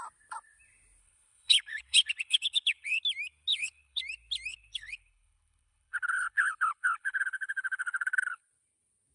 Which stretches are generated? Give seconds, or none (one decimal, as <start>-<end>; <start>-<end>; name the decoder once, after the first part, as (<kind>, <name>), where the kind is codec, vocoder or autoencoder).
1.0-3.0 (codec, HILCodec); 3.5-4.0; 4.5-8.4